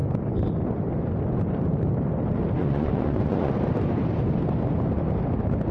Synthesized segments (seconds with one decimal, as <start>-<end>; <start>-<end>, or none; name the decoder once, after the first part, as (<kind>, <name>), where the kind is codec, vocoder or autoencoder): 2.6-3.5 (vocoder, Vocos)